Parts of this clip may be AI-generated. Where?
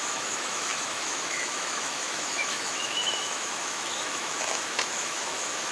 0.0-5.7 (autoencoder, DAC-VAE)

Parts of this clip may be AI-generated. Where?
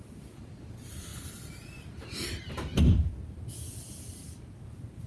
none